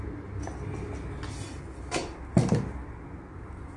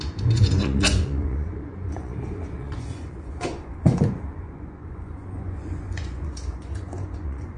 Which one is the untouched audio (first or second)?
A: first